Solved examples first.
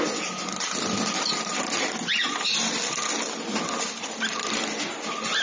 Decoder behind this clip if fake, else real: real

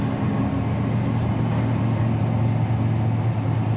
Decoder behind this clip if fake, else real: real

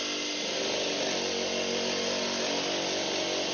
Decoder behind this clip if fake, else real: real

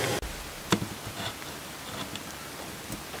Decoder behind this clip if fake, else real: real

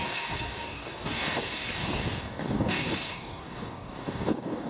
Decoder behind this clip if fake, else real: fake, codec, DAC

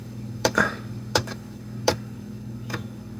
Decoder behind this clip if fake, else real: fake, codec, DAC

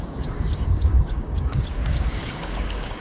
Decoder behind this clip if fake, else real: fake, codec, DAC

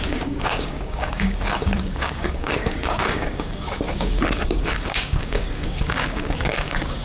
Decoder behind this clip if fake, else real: fake, codec, DAC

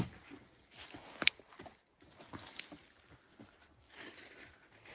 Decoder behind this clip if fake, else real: real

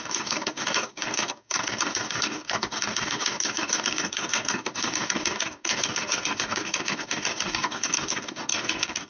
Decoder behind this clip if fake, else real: fake, codec, DAC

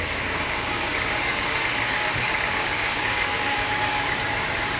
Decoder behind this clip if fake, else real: fake, codec, DAC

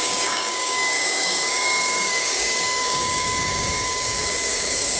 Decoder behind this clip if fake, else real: fake, codec, DAC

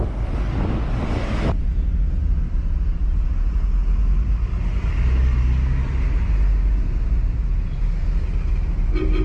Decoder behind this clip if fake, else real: real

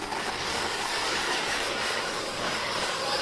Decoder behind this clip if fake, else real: fake, codec, DAC